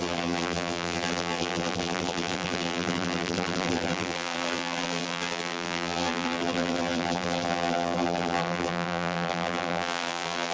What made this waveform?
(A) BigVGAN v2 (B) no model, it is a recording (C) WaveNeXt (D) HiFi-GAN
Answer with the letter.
A